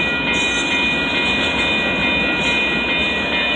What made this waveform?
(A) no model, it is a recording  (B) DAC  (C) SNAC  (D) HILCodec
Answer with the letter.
A